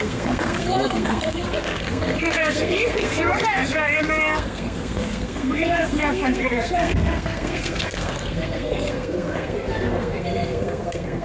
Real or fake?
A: fake